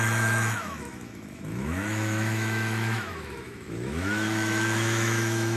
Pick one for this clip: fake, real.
fake